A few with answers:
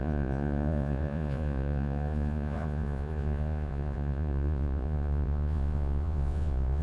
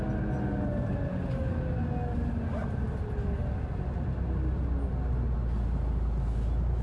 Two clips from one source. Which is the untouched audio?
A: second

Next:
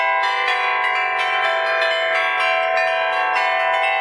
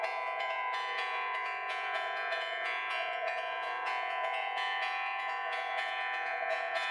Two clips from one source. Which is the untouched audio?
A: first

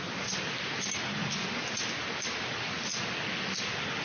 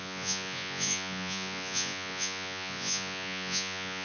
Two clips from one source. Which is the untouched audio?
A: first